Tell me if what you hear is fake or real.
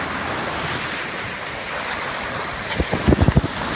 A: real